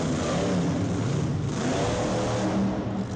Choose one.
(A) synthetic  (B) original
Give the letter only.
B